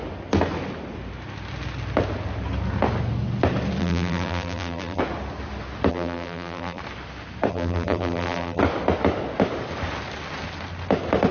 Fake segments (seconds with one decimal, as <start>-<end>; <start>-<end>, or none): 3.8-5.0; 5.9-6.8; 7.5-8.6